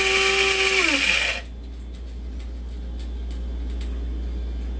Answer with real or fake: real